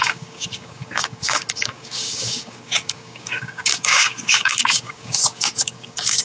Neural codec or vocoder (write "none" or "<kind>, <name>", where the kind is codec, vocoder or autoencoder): codec, DAC